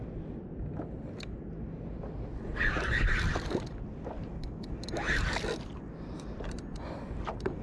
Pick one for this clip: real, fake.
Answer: real